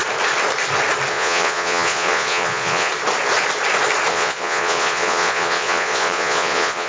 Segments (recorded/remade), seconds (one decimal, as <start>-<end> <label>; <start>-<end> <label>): 0.0-1.1 recorded; 1.1-2.9 remade; 2.9-4.1 recorded; 4.1-6.9 remade